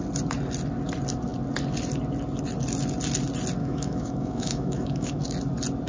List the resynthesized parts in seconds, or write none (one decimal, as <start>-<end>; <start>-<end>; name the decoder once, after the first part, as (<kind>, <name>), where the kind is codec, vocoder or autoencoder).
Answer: 3.6-5.2 (autoencoder, DAC-VAE)